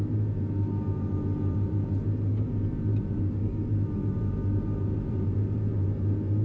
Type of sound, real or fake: fake